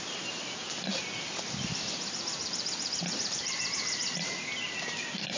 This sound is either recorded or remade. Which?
recorded